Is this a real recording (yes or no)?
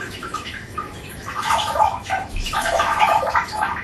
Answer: no